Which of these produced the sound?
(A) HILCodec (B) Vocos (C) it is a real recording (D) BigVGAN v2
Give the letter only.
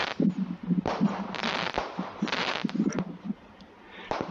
D